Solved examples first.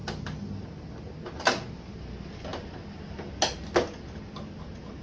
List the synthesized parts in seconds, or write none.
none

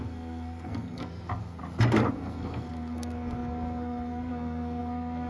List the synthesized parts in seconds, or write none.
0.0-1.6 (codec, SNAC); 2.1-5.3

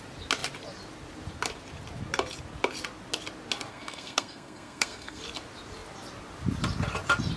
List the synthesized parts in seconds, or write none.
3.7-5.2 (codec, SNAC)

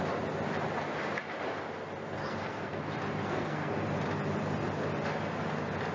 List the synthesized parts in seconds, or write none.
2.2-2.8 (codec, SNAC); 3.2-3.7